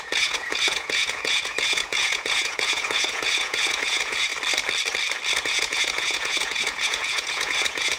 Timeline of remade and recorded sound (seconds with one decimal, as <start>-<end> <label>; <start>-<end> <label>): 0.0-4.3 remade; 4.3-5.4 recorded; 5.4-8.0 remade